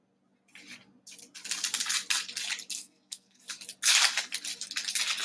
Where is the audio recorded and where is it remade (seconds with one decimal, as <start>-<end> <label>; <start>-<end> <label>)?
0.0-2.8 recorded; 2.8-3.4 remade; 3.4-5.2 recorded